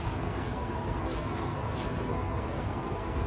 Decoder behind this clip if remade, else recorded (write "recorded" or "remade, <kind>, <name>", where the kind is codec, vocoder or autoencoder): remade, codec, SNAC